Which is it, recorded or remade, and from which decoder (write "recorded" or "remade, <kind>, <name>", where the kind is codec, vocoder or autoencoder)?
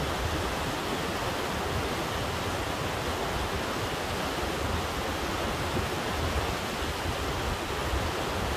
recorded